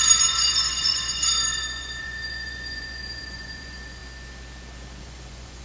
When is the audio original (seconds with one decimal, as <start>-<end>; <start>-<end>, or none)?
4.0-5.0